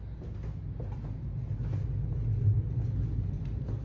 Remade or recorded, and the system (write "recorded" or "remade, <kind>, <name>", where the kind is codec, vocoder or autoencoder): recorded